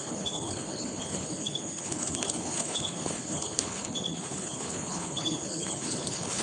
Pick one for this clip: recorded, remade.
remade